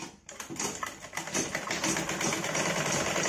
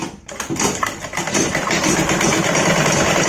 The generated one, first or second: second